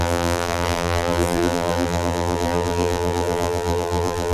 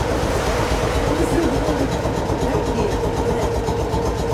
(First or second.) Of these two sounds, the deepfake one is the first